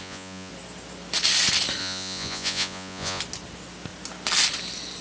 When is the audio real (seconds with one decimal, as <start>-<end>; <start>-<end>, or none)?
0.5-1.8; 3.2-5.0

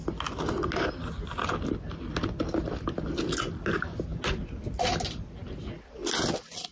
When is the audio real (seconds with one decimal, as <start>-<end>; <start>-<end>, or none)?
0.0-6.7

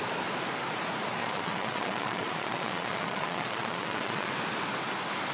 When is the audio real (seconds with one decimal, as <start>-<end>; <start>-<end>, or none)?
0.0-1.2; 4.3-5.3

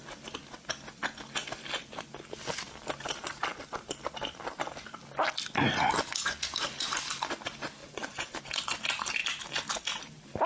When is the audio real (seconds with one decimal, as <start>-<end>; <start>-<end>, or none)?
0.0-7.8; 8.4-10.5

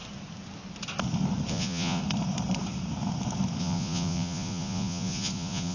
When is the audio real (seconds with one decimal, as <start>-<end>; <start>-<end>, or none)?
0.0-1.5; 2.0-3.6